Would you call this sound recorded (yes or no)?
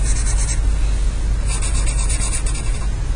yes